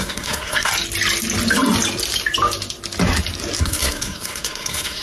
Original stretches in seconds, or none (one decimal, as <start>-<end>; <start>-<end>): 0.7-3.6